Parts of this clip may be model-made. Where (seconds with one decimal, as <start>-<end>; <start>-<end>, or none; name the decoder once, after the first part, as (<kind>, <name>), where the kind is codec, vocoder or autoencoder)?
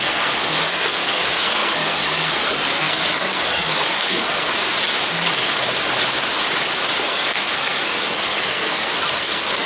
0.0-4.5 (codec, SNAC); 7.0-9.7